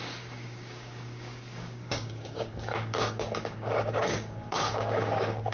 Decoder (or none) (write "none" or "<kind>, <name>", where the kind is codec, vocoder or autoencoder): codec, DAC